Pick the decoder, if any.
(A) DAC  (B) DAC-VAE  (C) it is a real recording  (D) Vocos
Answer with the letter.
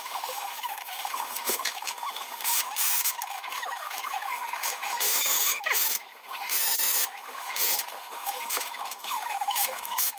B